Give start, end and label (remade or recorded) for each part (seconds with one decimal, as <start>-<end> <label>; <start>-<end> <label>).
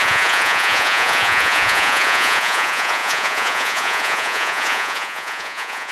0.0-5.9 remade